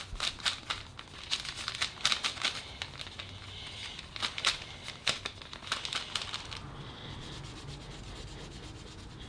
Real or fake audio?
real